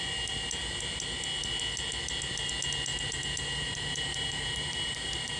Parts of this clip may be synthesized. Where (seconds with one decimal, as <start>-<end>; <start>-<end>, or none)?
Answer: 2.9-5.4